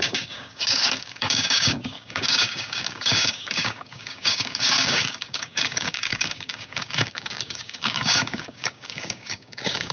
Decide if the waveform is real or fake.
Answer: fake